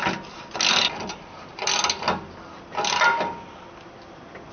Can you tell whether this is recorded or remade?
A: recorded